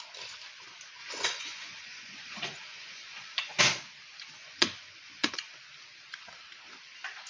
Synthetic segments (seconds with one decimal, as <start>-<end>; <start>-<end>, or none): 1.0-3.6; 4.4-5.6